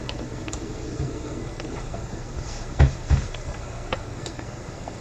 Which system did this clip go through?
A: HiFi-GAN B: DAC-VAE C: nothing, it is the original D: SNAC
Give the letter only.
D